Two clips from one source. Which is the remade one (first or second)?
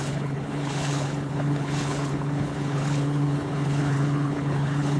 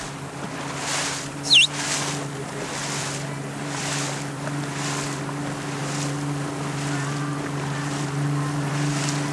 first